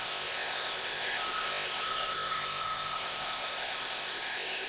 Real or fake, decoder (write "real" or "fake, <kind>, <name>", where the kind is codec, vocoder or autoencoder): fake, codec, ZipCodec